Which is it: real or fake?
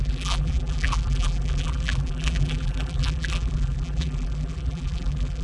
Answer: fake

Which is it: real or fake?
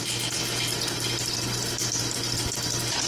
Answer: fake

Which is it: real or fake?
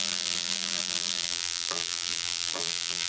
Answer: fake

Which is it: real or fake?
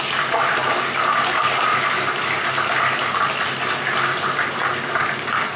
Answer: real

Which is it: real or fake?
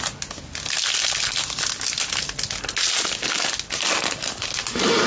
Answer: real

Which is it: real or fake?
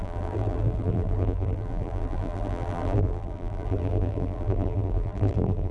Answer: fake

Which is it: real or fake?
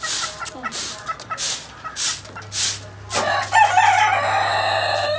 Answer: real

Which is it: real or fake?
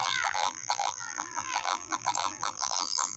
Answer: fake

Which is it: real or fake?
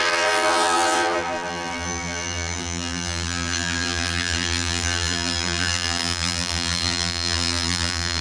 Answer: fake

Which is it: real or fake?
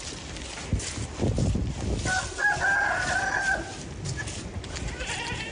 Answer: real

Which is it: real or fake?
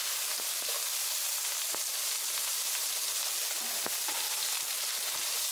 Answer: real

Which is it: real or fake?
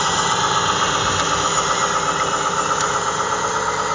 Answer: fake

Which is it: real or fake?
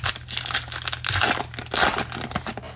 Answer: real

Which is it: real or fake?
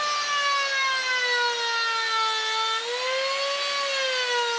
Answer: real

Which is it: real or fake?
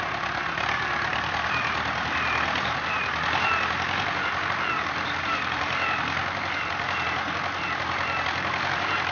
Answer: fake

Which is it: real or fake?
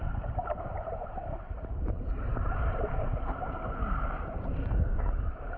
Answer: fake